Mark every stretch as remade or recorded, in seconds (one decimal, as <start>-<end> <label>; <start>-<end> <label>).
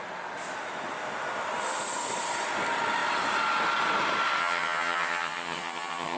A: 0.0-4.4 recorded; 4.4-6.2 remade